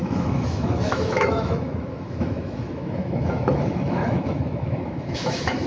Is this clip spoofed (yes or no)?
yes